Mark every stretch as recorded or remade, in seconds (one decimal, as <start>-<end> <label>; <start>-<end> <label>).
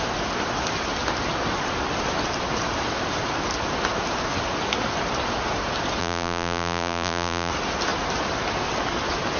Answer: 0.0-6.0 recorded; 6.0-7.5 remade; 7.5-9.4 recorded